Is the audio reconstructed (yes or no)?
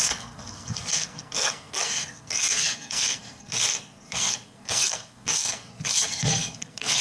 yes